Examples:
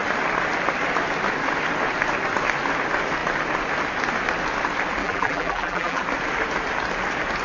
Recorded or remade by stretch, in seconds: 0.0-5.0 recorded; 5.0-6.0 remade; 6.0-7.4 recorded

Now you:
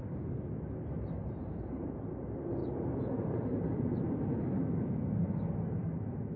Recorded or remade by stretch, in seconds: 0.0-1.2 recorded; 1.2-2.1 remade; 2.1-2.6 recorded; 2.6-4.6 remade; 4.6-6.4 recorded

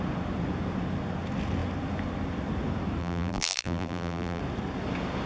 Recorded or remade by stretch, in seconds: 0.0-3.0 recorded; 3.0-4.4 remade; 4.4-5.3 recorded

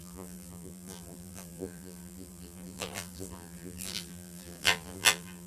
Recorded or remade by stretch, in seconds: 0.0-5.5 remade

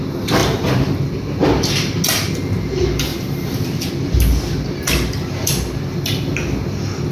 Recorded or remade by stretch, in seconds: 0.0-0.4 recorded; 0.4-1.0 remade; 1.0-3.1 recorded; 3.1-3.9 remade; 3.9-7.1 recorded

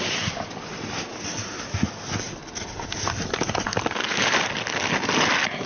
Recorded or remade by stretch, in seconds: 0.0-3.7 recorded; 3.7-4.5 remade; 4.5-5.7 recorded

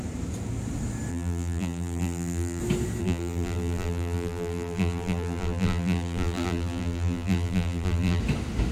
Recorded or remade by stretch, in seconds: 0.0-1.1 recorded; 1.1-2.6 remade; 2.6-3.0 recorded; 3.0-8.2 remade; 8.2-8.7 recorded